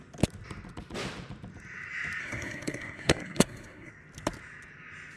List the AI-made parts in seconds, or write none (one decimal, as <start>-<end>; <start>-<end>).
2.2-3.9